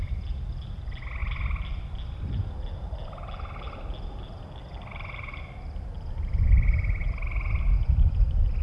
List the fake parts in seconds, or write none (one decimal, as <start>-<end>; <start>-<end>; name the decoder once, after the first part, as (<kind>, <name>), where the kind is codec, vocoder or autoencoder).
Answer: none